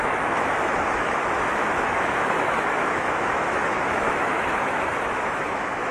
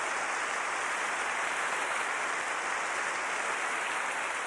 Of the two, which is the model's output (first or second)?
first